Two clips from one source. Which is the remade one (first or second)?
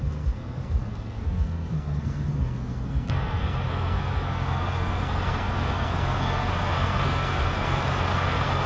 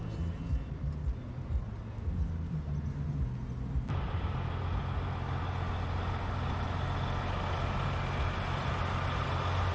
first